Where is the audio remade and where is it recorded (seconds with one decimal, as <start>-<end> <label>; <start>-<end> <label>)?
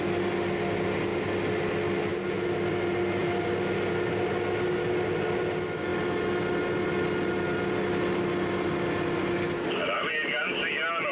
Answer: 0.0-11.1 recorded